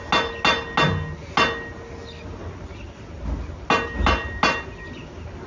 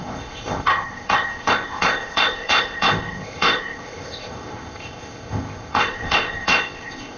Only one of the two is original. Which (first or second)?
first